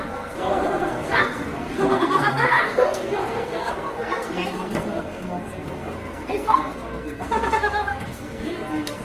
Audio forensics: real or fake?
fake